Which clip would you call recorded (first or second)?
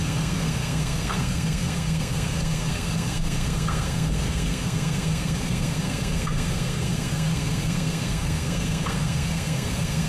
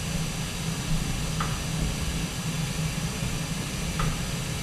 second